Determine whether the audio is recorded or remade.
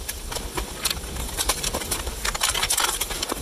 remade